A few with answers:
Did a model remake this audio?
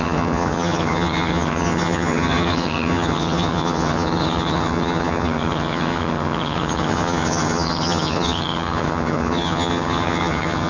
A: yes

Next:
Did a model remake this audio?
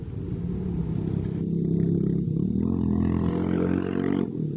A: no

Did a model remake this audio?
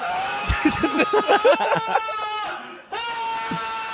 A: no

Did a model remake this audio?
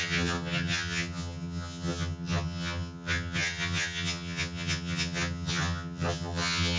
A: yes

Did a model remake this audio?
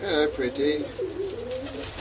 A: no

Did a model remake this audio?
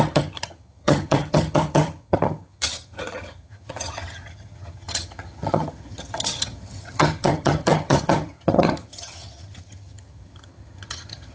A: yes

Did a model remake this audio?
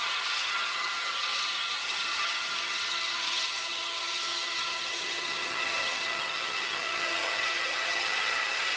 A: yes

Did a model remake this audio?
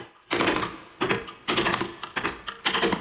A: no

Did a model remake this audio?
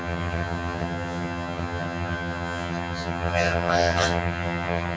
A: yes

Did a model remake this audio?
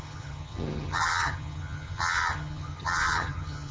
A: yes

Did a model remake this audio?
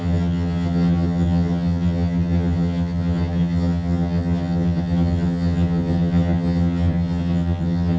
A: yes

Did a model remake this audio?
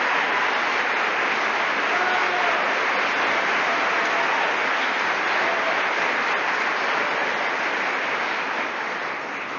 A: no